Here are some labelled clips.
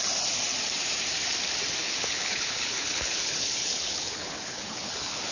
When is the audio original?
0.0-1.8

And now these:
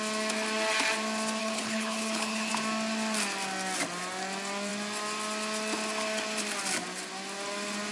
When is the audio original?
0.0-1.4; 2.5-7.9

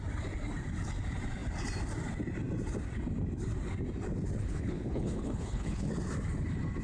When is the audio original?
0.0-4.4; 5.9-6.8

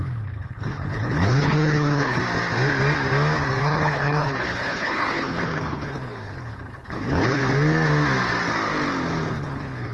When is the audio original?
2.2-3.6; 7.4-9.3

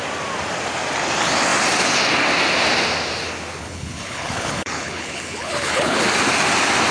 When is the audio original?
0.0-3.6; 6.0-6.9

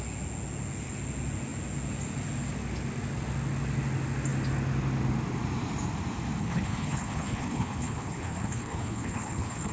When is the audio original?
0.0-6.4